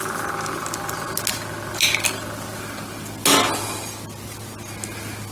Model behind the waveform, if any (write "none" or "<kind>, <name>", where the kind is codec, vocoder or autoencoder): none